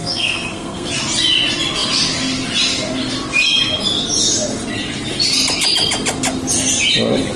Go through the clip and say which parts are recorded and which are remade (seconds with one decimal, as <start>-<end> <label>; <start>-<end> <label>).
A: 0.0-0.9 remade; 0.9-7.4 recorded